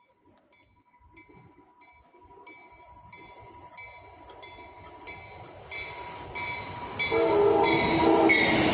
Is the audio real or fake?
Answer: real